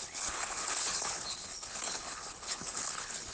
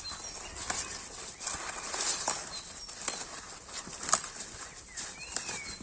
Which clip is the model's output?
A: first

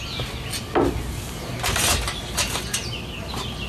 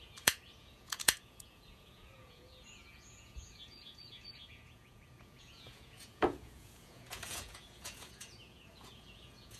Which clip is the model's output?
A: second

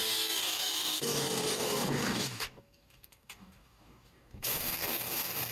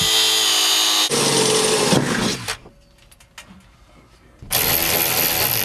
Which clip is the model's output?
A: first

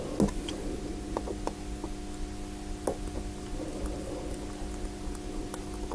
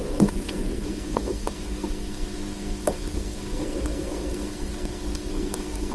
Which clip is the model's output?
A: second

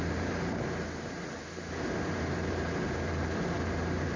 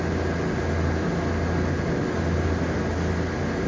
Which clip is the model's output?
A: first